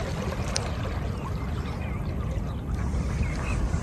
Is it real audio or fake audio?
real